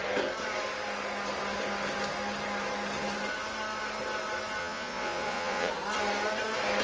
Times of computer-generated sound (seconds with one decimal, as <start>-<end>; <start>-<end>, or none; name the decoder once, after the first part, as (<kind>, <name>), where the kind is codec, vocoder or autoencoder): 4.6-5.7 (vocoder, Vocos)

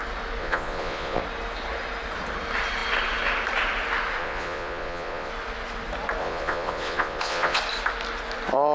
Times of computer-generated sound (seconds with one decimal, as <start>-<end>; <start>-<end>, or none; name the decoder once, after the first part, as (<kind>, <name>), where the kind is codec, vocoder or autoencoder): 0.4-1.2 (vocoder, Vocos); 4.2-5.3; 6.2-7.6

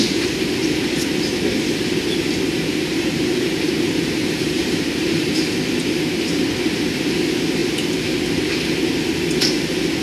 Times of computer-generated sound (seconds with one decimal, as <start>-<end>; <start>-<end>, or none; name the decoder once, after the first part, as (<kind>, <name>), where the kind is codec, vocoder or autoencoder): 2.9-5.4 (vocoder, BigVGAN v2)

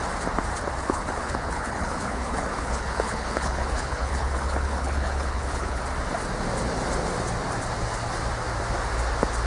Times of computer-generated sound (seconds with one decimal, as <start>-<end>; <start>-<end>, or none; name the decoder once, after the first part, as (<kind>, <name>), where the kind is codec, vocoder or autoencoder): 0.8-5.8 (codec, HILCodec)